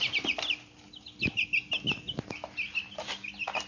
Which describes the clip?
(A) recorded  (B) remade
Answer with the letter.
A